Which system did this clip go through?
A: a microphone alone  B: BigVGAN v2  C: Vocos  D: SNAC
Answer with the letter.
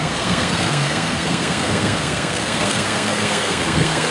D